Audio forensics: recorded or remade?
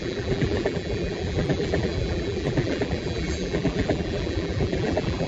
remade